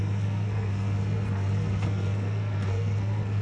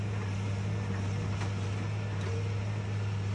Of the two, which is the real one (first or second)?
second